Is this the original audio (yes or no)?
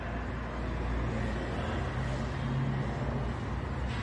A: yes